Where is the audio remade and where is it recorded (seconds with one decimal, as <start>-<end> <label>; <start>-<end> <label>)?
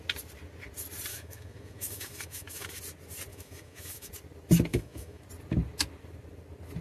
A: 0.0-1.1 recorded; 1.1-2.8 remade; 2.8-3.3 recorded; 3.3-4.1 remade; 4.1-4.7 recorded; 4.7-5.2 remade; 5.2-6.8 recorded